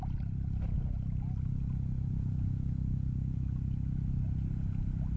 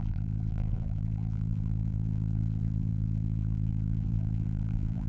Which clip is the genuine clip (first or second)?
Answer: first